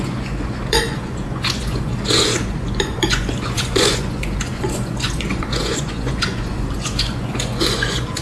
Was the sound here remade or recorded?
remade